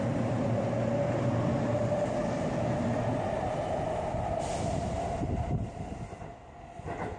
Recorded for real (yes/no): yes